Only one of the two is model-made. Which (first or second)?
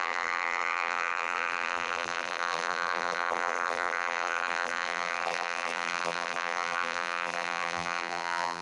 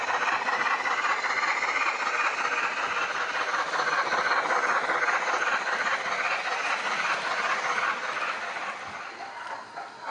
first